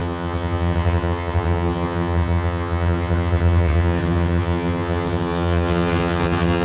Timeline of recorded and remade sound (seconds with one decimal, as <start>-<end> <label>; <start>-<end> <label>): 0.0-6.6 remade